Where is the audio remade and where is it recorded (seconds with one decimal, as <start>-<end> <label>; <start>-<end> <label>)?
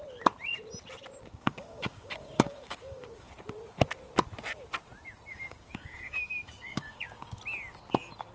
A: 0.0-1.2 recorded; 1.2-3.3 remade; 3.3-5.3 recorded; 5.3-7.4 remade; 7.4-8.3 recorded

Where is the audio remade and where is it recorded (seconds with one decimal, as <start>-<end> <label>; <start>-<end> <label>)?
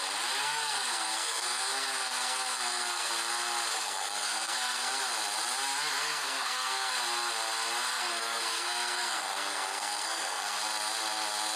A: 0.0-0.4 recorded; 0.4-3.1 remade; 3.1-3.7 recorded; 3.7-5.0 remade; 5.0-6.0 recorded; 6.0-6.9 remade; 6.9-7.9 recorded; 7.9-10.6 remade; 10.6-11.6 recorded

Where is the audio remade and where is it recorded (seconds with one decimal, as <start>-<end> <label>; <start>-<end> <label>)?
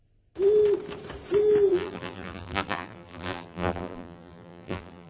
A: 0.0-1.7 recorded; 1.7-5.1 remade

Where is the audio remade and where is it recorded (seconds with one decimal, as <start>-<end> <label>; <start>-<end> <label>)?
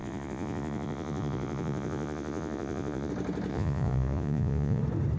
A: 0.0-3.1 remade; 3.1-3.5 recorded; 3.5-4.8 remade; 4.8-5.2 recorded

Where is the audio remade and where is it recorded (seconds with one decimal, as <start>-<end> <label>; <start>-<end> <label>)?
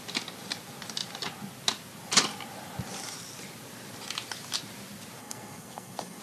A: 0.0-5.2 recorded; 5.2-6.2 remade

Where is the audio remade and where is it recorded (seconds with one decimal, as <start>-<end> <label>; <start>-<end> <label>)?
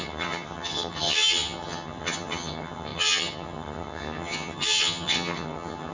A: 0.0-5.9 remade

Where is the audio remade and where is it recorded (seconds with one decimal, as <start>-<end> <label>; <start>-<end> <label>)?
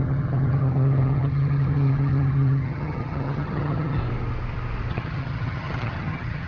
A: 0.0-4.0 remade; 4.0-4.9 recorded; 4.9-6.5 remade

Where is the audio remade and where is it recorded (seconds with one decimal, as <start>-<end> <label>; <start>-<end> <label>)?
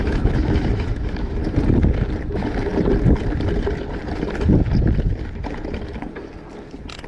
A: 0.0-1.4 remade; 1.4-2.3 recorded; 2.3-2.7 remade; 2.7-7.1 recorded